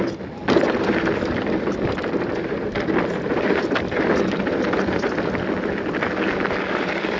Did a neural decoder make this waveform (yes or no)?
no